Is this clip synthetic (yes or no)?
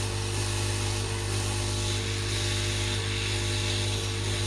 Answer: no